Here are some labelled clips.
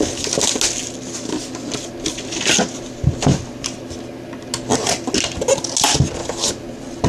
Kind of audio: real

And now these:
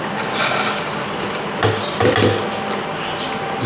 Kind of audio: real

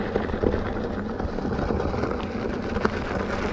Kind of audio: real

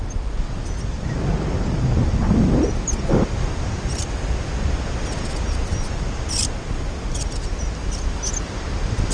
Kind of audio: real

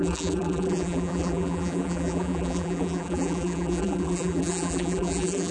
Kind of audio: fake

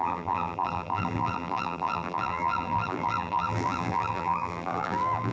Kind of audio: fake